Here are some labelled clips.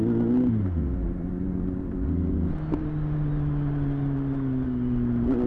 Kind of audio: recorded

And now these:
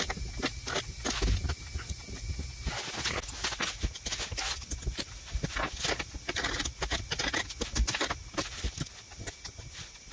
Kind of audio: recorded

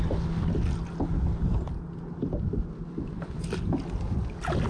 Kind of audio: recorded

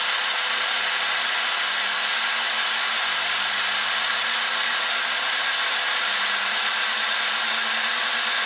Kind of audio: recorded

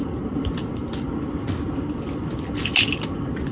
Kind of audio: recorded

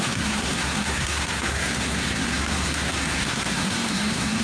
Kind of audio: remade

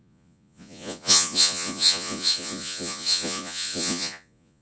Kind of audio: remade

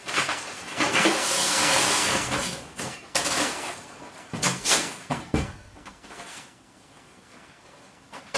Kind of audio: remade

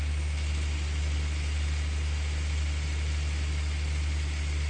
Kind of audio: recorded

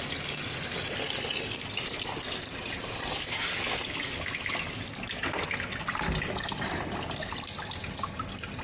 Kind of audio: recorded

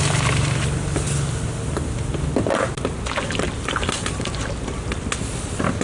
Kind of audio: recorded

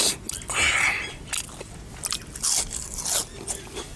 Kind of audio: recorded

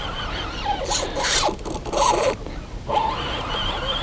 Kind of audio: recorded